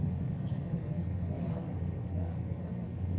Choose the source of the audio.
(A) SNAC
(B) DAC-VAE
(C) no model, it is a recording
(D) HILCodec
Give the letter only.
A